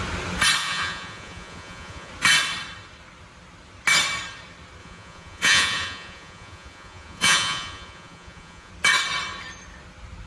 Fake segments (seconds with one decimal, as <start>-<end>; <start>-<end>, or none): 0.6-2.1; 4.8-8.7